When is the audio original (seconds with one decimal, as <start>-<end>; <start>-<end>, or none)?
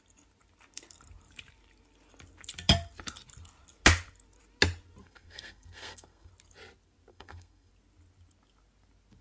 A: 0.0-5.0; 6.3-7.1; 7.7-9.2